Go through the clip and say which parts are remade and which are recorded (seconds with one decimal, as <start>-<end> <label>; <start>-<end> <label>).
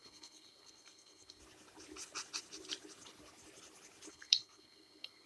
0.0-1.4 remade; 1.4-4.1 recorded; 4.1-5.3 remade